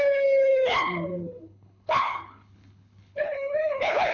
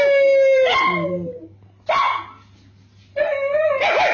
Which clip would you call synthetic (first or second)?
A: first